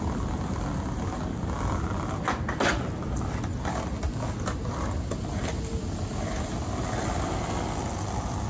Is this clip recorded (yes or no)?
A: yes